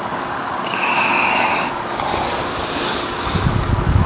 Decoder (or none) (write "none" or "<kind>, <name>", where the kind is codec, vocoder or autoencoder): codec, DAC